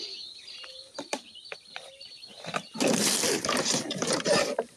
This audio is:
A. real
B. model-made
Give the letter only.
B